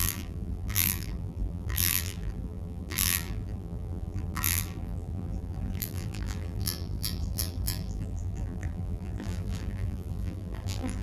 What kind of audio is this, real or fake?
fake